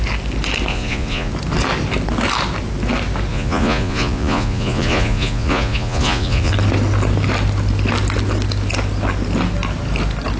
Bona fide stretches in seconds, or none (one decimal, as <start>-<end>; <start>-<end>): 0.0-0.7; 1.3-3.3; 6.5-10.4